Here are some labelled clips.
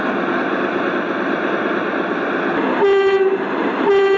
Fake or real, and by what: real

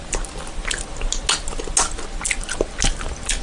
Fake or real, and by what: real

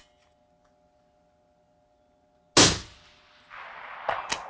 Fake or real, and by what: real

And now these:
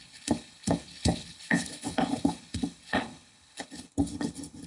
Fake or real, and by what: fake, codec, HILCodec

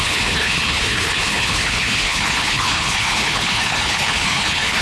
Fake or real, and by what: fake, codec, HILCodec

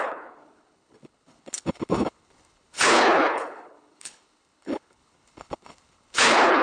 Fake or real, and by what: fake, codec, HILCodec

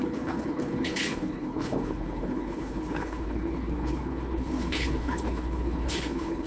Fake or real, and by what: fake, codec, HILCodec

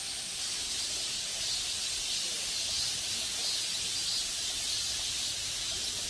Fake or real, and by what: real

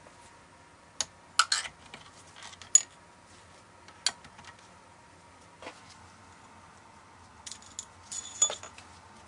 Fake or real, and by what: real